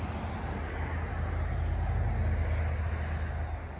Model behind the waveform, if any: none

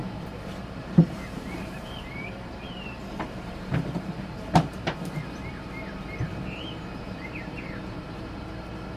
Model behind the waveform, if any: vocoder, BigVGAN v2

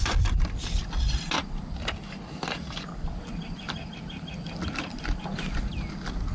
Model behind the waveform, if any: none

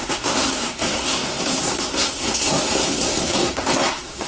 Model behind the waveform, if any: codec, SNAC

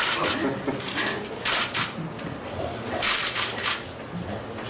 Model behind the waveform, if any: none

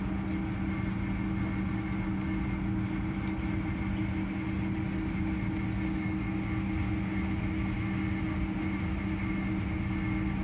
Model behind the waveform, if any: none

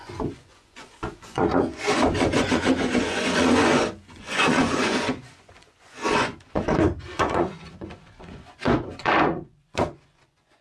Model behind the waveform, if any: vocoder, Vocos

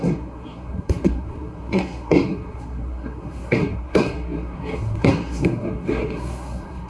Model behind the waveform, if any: codec, SNAC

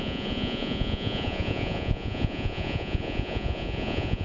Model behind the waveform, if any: vocoder, Vocos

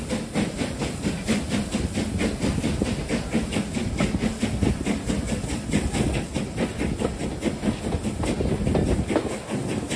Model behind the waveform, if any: none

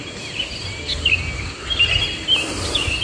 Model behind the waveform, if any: none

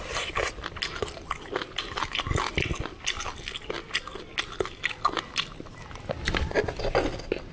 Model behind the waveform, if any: none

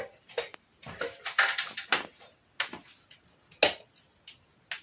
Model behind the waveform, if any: none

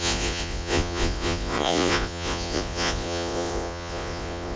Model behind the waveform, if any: vocoder, Vocos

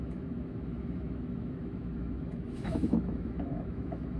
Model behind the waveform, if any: autoencoder, DAC-VAE